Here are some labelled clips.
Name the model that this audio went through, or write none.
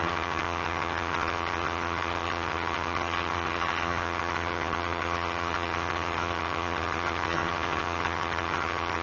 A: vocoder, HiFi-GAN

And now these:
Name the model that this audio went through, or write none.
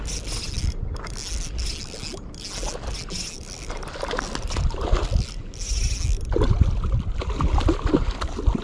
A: none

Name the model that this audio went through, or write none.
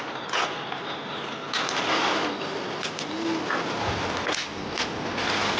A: none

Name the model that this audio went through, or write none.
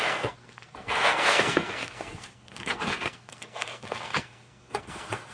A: codec, SNAC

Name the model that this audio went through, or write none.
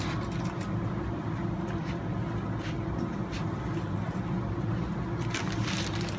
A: none